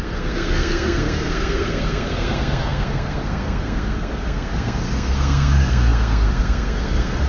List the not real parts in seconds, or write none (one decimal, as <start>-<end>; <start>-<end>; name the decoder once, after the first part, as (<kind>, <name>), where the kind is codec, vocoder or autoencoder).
0.0-7.3 (codec, SNAC)